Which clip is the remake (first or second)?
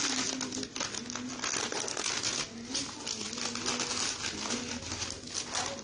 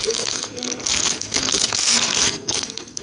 second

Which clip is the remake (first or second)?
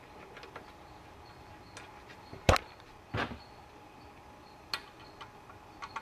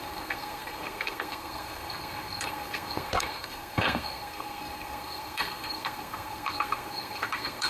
second